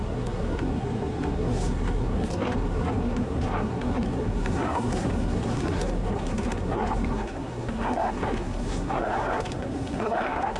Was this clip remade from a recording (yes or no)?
yes